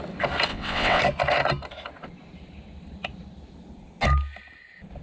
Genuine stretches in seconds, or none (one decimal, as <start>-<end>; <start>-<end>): 0.0-0.5; 1.0-5.0